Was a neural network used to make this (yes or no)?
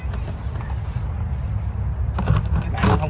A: no